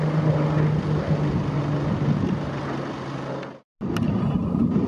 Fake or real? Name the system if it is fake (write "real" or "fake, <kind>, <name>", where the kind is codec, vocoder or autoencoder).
real